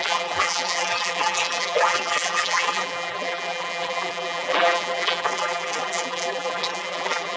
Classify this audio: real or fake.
fake